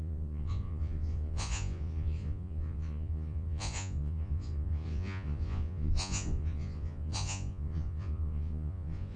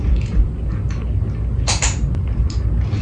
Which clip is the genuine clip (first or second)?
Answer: second